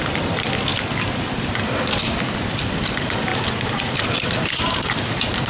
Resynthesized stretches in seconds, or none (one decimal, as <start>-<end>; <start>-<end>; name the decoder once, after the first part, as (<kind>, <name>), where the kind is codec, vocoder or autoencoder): 3.3-3.8 (vocoder, BigVGAN v2)